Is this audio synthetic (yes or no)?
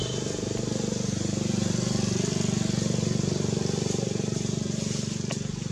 no